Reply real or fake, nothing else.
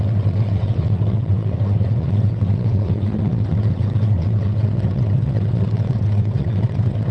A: fake